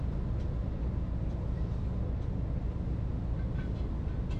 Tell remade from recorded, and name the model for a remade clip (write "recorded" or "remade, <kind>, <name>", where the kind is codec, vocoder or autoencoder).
recorded